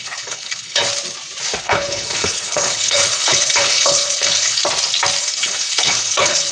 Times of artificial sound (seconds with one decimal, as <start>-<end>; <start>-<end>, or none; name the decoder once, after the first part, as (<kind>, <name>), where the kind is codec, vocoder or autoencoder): 0.0-0.8 (codec, HILCodec); 1.6-4.6; 5.2-6.5